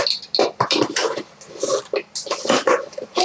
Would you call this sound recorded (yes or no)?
yes